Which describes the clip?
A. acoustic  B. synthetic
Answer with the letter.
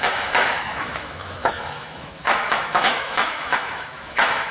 B